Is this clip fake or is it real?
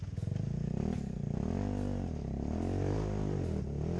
real